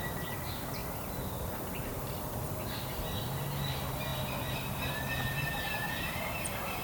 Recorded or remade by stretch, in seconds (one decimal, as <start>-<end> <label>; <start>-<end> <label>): 0.0-0.8 recorded; 0.8-2.7 remade; 2.7-4.1 recorded; 4.1-6.8 remade